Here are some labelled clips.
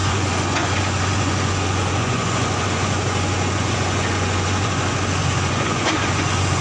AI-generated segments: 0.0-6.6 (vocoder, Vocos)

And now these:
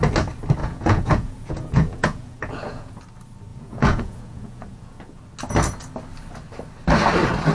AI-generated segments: 0.6-3.0 (vocoder, Vocos); 3.5-5.2

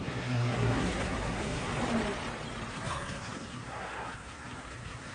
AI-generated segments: 0.0-1.7 (codec, SNAC); 2.7-5.1

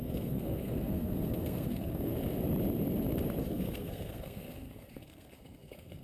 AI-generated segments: 0.0-2.1 (codec, SNAC); 3.4-6.0

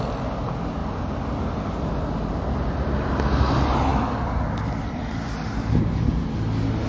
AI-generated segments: none

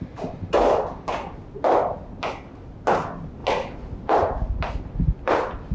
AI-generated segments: none

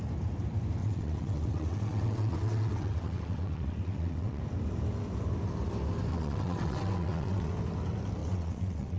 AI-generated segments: 0.8-4.4 (vocoder, WaveNeXt); 6.1-7.5; 8.2-9.0

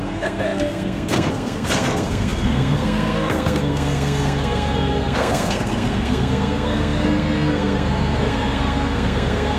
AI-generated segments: 0.0-9.6 (codec, SNAC)